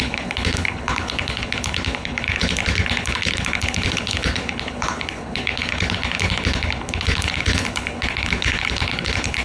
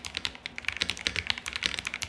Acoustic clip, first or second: second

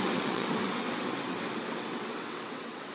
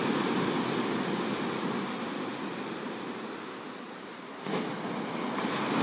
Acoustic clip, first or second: second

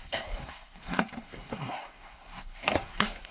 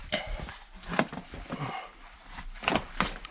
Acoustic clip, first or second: second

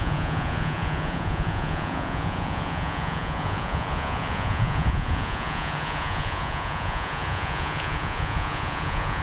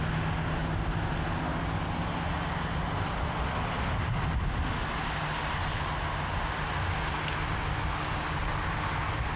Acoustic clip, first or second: second